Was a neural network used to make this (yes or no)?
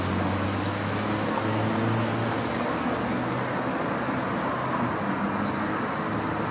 no